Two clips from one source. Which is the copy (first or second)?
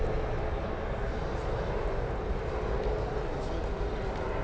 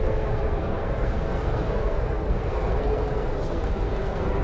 second